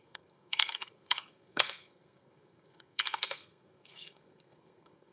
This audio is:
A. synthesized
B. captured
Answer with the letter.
A